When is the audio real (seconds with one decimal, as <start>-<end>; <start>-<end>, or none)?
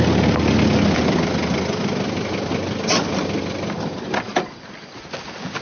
0.0-5.6